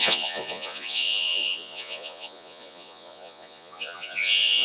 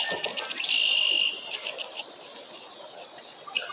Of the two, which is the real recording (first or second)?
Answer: second